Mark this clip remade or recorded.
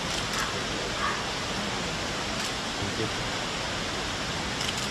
recorded